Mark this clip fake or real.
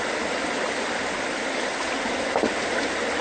real